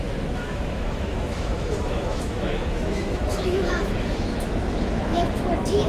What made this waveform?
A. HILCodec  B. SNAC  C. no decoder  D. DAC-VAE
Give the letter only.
D